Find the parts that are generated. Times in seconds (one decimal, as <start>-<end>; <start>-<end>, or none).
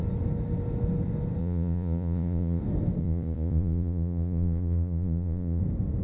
1.4-2.6; 3.0-5.6